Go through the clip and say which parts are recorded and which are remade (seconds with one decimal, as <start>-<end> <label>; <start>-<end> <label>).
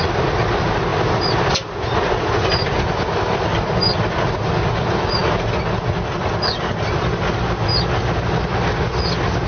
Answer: 0.0-9.5 recorded